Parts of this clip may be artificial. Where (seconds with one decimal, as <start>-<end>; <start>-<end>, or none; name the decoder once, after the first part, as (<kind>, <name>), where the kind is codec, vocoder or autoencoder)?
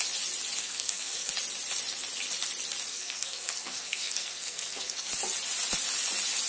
0.6-1.3 (codec, SNAC); 2.9-5.1